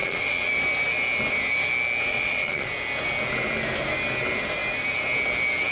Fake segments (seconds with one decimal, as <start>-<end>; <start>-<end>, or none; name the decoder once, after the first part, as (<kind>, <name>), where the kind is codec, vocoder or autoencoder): 0.0-0.5 (vocoder, Vocos); 2.1-2.7